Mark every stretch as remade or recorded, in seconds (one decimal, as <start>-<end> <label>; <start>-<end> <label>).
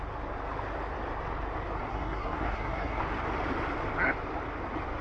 0.0-1.9 recorded; 1.9-3.0 remade; 3.0-5.0 recorded